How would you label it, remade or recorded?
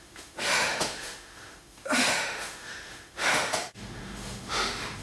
remade